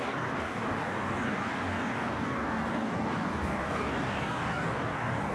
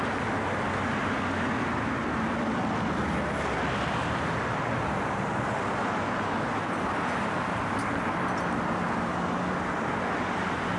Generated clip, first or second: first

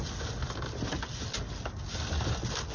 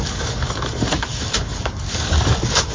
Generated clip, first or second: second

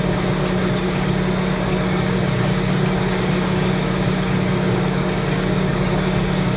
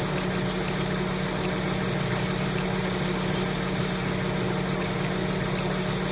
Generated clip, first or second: first